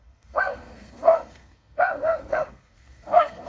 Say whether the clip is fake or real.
fake